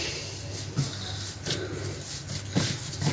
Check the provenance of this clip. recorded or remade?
recorded